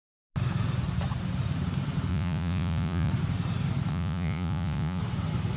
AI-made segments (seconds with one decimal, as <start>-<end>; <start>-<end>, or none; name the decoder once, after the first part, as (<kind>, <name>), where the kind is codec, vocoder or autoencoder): 2.1-3.1 (vocoder, Vocos); 3.9-5.0